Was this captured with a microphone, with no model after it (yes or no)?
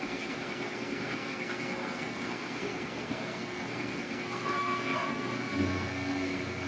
no